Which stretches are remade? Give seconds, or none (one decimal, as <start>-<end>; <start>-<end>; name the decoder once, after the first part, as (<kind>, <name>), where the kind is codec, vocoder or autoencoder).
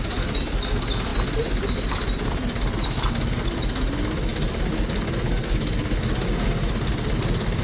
none